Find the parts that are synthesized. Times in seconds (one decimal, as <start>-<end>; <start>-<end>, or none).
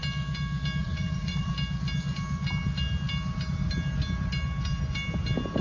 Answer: 0.8-1.5